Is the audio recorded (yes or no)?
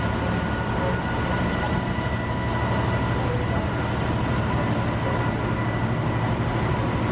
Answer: yes